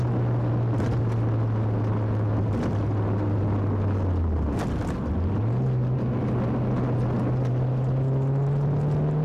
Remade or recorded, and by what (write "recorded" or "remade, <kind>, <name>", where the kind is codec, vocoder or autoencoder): recorded